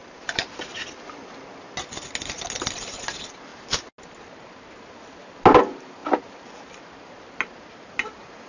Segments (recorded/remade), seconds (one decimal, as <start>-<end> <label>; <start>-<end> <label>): 0.0-0.9 remade; 0.9-6.0 recorded; 6.0-6.6 remade; 6.6-8.5 recorded